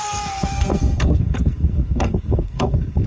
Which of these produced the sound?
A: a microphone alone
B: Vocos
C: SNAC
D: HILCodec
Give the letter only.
C